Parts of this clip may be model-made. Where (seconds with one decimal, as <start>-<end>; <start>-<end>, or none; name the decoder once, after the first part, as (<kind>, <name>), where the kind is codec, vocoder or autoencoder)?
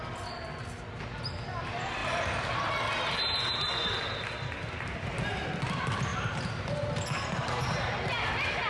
2.0-2.7 (vocoder, BigVGAN v2); 6.1-6.7